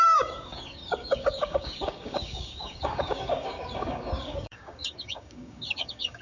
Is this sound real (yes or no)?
no